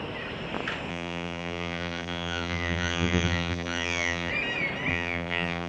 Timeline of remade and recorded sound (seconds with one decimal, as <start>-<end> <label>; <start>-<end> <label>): 0.0-0.9 recorded; 0.9-4.3 remade; 4.3-4.9 recorded; 4.9-5.7 remade